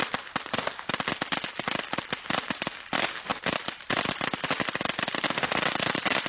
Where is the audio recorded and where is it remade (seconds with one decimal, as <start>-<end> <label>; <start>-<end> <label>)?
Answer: 0.0-6.3 recorded